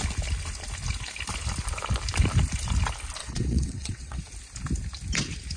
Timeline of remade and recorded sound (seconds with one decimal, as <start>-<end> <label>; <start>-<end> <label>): 0.0-3.2 recorded; 3.2-4.2 remade; 4.2-5.6 recorded